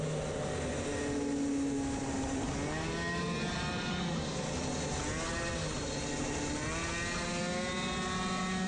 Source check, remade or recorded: recorded